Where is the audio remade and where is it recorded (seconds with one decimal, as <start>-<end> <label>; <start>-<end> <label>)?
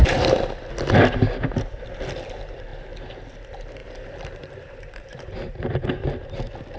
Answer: 0.0-0.6 remade; 0.6-3.8 recorded; 3.8-5.9 remade; 5.9-6.8 recorded